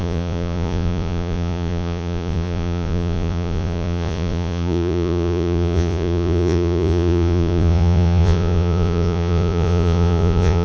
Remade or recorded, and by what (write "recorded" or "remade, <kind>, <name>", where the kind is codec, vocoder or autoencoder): remade, vocoder, Vocos